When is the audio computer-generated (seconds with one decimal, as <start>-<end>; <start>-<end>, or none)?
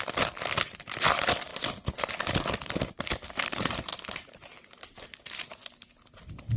none